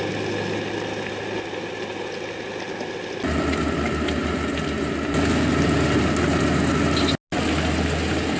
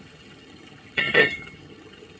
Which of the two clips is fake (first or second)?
second